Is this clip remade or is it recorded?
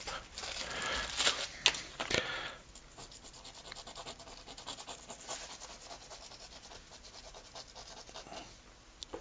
recorded